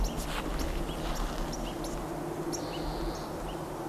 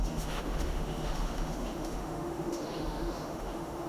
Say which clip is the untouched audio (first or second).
first